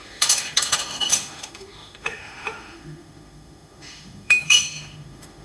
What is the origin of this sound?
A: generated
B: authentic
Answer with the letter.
A